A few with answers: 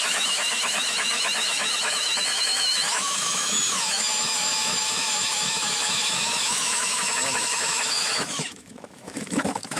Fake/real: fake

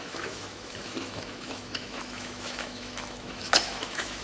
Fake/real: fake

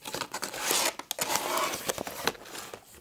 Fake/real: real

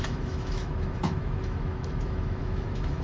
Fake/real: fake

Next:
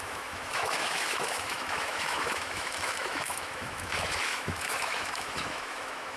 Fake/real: fake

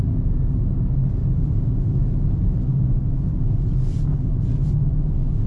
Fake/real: real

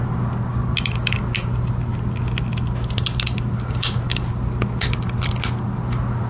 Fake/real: real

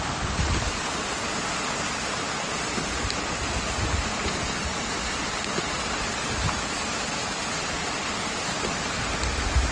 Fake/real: real